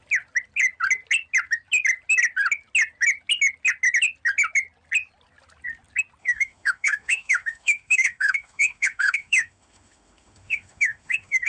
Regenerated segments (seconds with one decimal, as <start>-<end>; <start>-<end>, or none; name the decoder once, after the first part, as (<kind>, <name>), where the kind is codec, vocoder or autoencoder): 6.2-11.5 (autoencoder, DAC-VAE)